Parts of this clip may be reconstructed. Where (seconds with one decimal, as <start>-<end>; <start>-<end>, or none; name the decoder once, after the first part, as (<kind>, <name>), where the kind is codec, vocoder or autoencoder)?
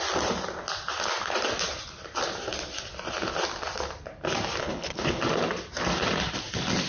4.6-5.2 (codec, HILCodec)